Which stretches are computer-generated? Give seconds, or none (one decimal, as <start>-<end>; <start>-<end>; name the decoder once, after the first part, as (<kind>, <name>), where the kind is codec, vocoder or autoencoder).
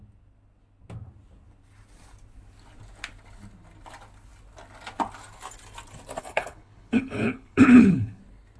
6.2-8.2 (codec, HILCodec)